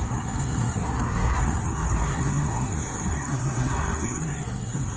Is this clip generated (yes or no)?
yes